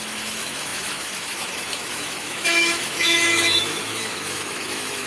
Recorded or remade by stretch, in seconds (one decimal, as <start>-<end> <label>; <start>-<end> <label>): 0.0-5.1 remade